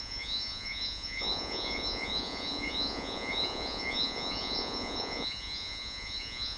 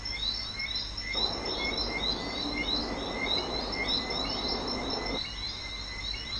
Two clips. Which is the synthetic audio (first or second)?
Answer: first